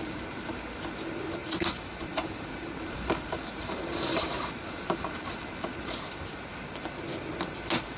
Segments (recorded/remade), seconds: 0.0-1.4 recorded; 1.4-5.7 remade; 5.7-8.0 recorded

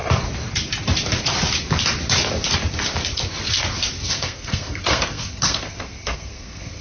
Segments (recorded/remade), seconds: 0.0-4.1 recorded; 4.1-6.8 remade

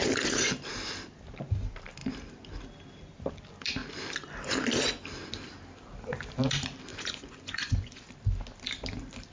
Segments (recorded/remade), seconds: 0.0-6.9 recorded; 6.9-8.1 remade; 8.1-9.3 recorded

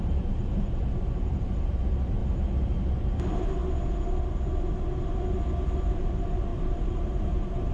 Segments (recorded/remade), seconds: 0.0-2.2 remade; 2.2-3.2 recorded; 3.2-3.6 remade; 3.6-5.9 recorded; 5.9-7.7 remade

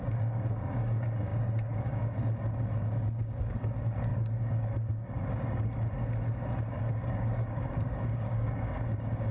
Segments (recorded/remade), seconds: 0.0-9.3 remade